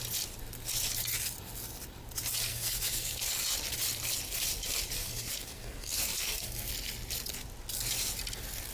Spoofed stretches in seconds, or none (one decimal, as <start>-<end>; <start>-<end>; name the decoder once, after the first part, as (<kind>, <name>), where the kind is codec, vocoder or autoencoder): 2.5-3.4 (codec, SNAC); 5.0-6.7